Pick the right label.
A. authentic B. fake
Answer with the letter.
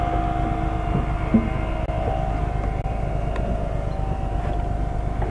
A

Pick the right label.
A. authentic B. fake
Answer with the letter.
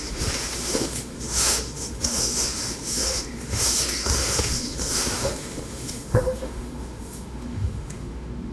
B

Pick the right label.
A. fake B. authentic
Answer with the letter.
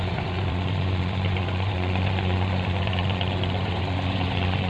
A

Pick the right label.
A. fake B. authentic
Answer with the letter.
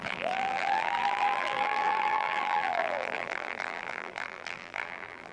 A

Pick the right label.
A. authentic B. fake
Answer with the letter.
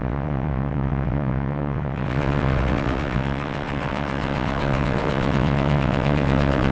B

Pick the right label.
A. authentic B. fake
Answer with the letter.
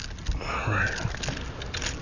A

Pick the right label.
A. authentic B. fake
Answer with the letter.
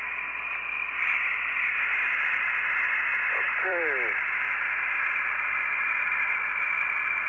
B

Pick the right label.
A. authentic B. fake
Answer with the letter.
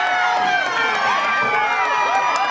A